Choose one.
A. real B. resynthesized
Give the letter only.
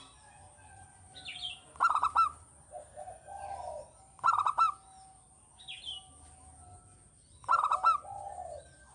A